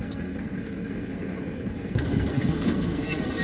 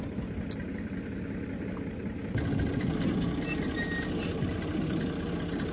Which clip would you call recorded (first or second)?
second